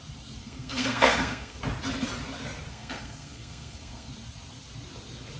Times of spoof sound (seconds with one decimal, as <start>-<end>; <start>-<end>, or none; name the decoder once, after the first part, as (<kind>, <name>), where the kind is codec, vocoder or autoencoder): 0.4-1.6 (codec, SNAC); 2.7-4.1